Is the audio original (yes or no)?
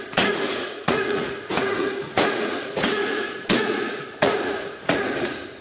no